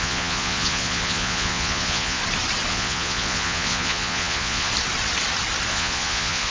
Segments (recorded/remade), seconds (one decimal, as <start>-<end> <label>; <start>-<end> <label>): 0.0-2.2 remade; 2.2-2.7 recorded; 2.7-4.7 remade; 4.7-5.7 recorded; 5.7-6.5 remade